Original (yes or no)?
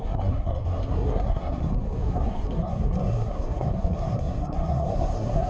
no